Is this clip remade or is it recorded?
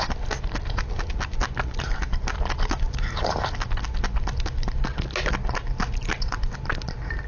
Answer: recorded